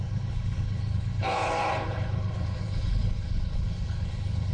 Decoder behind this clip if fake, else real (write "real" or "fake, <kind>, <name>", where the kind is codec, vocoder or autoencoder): fake, codec, HILCodec